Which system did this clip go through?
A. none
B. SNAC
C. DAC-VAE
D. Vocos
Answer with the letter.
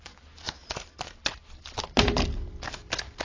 A